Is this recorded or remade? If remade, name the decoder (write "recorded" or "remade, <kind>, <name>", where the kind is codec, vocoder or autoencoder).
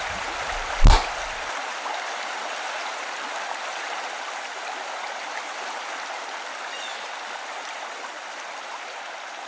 remade, vocoder, BigVGAN v2